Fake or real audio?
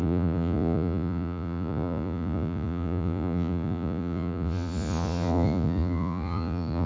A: fake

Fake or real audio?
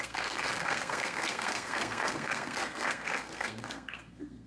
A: fake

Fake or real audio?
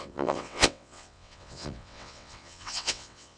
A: fake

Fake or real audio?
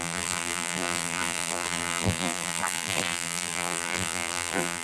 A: fake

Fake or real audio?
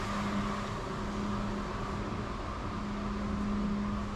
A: real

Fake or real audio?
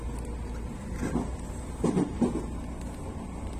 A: real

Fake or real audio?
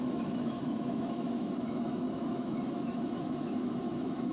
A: fake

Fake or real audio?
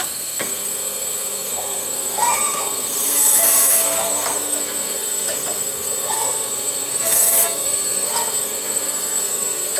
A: fake